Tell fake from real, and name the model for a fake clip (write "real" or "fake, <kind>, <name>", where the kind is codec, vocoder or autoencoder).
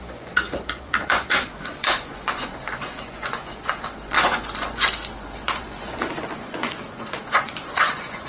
fake, vocoder, Vocos